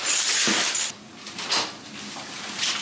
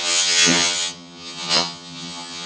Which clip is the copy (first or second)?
second